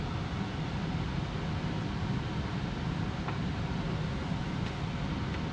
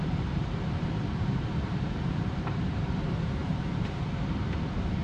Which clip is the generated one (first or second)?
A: second